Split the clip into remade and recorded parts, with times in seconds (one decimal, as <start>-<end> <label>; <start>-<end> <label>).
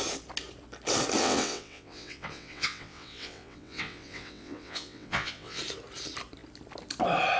0.0-1.2 recorded; 1.2-5.6 remade; 5.6-7.4 recorded